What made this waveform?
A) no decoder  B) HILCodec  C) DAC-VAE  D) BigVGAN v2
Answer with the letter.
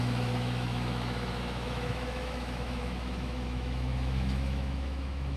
C